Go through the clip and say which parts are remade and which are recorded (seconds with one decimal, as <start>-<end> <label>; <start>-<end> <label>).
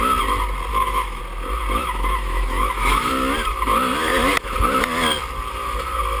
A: 0.0-0.7 recorded; 0.7-1.2 remade; 1.2-1.8 recorded; 1.8-3.1 remade; 3.1-6.2 recorded